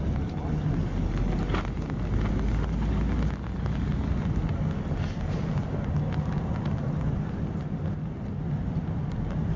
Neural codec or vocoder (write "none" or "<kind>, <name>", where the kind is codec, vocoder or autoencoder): none